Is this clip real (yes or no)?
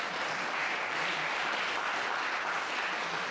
yes